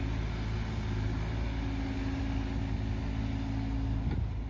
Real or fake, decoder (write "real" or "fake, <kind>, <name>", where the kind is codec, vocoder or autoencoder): real